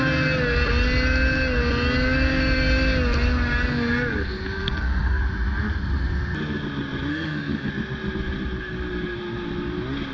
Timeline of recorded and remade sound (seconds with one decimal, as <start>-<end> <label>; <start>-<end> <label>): 0.0-4.6 recorded; 4.6-5.2 remade; 5.2-7.1 recorded; 7.1-7.7 remade; 7.7-10.1 recorded